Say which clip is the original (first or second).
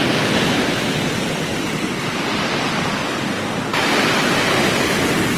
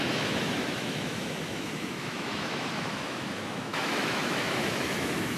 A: first